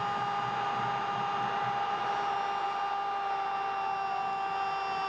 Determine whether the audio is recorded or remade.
recorded